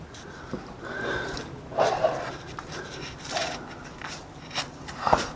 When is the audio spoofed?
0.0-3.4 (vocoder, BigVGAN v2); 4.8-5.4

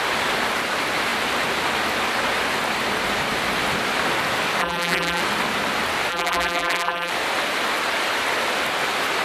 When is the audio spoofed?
4.6-5.2 (vocoder, BigVGAN v2); 6.1-7.1